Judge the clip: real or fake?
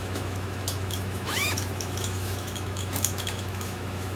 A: fake